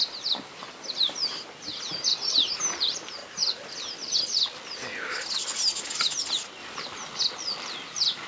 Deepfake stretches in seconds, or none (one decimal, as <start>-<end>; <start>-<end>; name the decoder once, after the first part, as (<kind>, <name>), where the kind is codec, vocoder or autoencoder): none